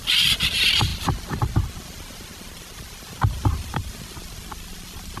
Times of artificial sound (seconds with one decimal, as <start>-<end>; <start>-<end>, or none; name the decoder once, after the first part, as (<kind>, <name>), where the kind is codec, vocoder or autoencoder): none